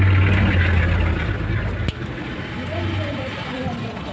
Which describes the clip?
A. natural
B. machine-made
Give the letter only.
A